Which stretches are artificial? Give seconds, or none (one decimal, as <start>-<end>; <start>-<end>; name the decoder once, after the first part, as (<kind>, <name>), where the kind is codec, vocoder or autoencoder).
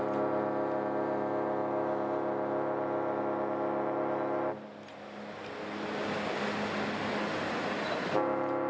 none